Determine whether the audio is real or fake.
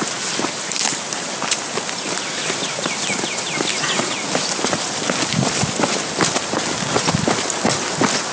real